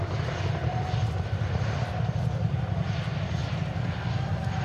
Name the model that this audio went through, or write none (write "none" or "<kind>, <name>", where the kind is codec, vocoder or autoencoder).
none